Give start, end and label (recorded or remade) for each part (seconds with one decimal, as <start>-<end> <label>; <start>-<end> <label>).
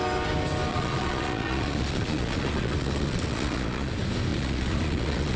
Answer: 0.0-0.7 recorded; 0.7-3.9 remade; 3.9-4.3 recorded; 4.3-5.4 remade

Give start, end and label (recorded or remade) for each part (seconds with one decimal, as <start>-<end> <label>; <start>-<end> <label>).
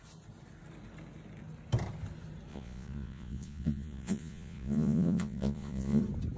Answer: 0.0-2.5 recorded; 2.5-6.0 remade; 6.0-6.4 recorded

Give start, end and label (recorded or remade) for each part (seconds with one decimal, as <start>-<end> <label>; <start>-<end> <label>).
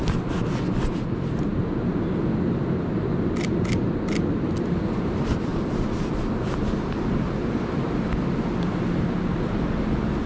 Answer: 0.0-10.3 recorded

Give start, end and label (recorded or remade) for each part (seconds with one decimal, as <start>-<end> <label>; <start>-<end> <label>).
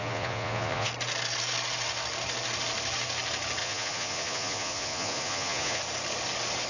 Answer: 0.0-0.9 remade; 0.9-3.6 recorded; 3.6-5.8 remade; 5.8-6.7 recorded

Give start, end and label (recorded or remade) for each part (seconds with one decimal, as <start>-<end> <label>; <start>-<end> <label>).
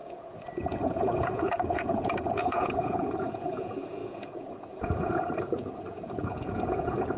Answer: 0.0-7.2 remade